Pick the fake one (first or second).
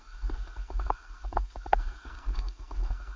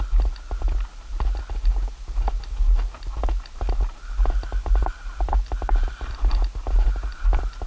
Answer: first